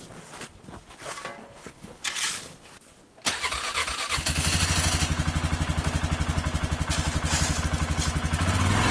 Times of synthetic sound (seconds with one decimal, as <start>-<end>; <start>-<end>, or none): 1.4-2.0